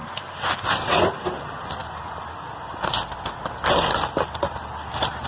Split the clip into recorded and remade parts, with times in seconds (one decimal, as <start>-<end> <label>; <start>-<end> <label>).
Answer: 0.0-5.3 recorded